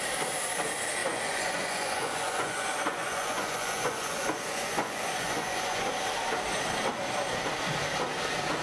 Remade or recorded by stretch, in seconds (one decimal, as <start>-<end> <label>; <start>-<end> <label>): 0.0-1.0 recorded; 1.0-5.9 remade; 5.9-8.6 recorded